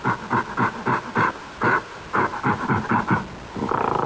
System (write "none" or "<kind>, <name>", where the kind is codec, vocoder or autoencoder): none